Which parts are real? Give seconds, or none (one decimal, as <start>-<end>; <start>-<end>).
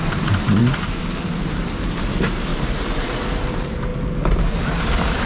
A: 0.6-2.0; 2.5-3.5; 3.9-4.8